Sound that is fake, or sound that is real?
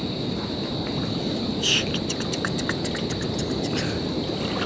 real